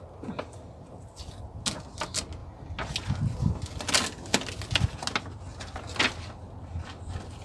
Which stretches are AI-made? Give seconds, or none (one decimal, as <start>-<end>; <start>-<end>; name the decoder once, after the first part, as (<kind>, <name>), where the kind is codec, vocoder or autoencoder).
none